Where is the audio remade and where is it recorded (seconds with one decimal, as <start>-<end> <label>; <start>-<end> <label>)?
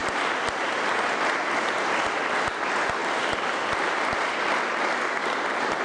0.0-5.8 recorded